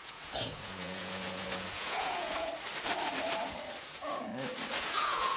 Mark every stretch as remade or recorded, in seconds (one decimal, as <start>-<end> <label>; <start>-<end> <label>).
0.0-2.5 remade; 2.5-3.8 recorded; 3.8-4.3 remade; 4.3-4.8 recorded; 4.8-5.4 remade